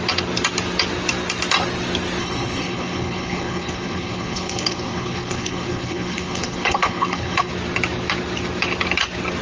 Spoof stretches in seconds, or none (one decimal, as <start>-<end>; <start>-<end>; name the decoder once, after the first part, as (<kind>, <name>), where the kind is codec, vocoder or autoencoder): 2.2-7.5 (codec, HILCodec)